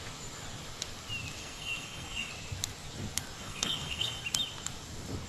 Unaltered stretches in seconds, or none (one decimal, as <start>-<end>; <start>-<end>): 0.0-1.4; 2.3-3.4; 4.2-5.3